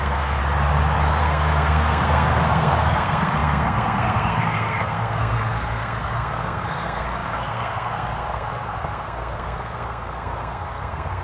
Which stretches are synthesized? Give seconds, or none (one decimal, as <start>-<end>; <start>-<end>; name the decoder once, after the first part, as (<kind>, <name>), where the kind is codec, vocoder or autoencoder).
0.0-0.4 (codec, SNAC); 1.2-11.2